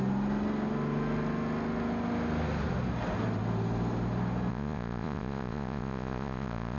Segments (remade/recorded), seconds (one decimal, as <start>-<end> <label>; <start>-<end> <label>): 0.0-4.5 recorded; 4.5-6.8 remade